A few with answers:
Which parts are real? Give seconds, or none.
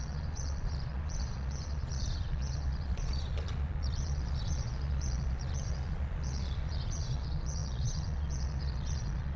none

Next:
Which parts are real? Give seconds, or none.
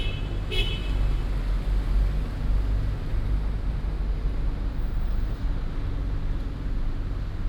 0.0-7.5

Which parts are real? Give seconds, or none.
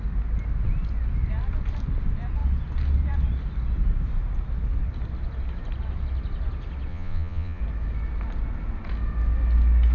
0.0-6.9; 7.6-9.9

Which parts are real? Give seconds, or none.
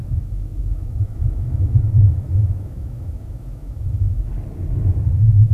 4.3-5.1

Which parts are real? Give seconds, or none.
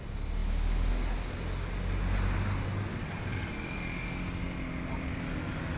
0.0-5.8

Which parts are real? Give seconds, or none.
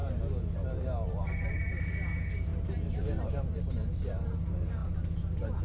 0.0-5.6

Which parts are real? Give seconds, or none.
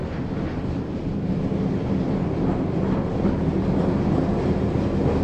0.0-5.2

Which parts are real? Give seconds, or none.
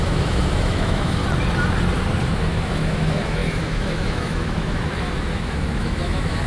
1.2-2.3